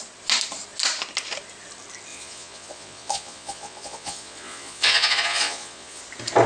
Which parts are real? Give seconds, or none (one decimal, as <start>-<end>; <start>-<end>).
0.0-2.1; 6.0-6.5